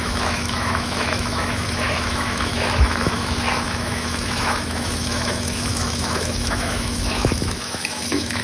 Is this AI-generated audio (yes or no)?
yes